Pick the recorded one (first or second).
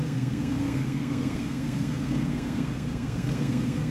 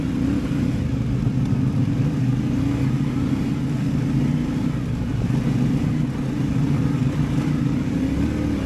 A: second